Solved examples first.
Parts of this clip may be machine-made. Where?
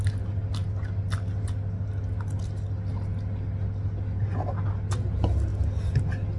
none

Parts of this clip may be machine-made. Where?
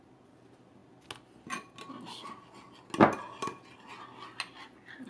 none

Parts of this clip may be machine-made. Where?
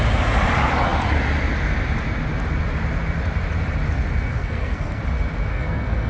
4.3-5.0 (codec, SNAC); 5.5-6.1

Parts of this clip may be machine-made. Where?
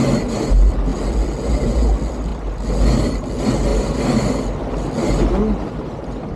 none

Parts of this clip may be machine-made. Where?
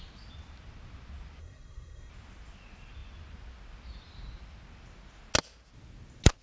1.4-2.1 (codec, SNAC)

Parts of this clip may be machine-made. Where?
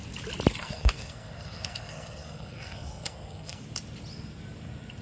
0.6-3.6 (codec, SNAC)